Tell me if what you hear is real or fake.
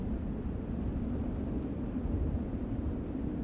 real